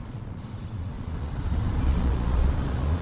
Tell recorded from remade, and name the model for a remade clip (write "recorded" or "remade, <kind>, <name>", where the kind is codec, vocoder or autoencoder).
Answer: remade, vocoder, Vocos